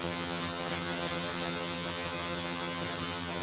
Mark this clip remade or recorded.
remade